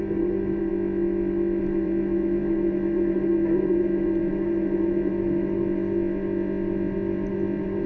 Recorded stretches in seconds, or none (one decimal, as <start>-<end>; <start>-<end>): 0.7-1.6; 5.1-7.3